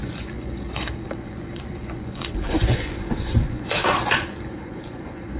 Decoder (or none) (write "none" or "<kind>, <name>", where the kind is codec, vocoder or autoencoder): vocoder, Vocos